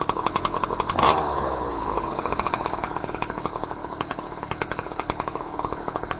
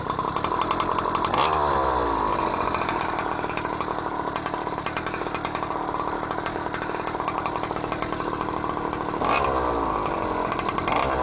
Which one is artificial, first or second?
first